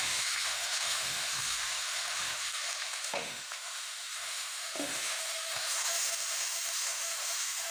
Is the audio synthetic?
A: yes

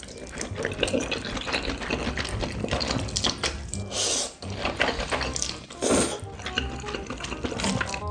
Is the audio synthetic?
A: no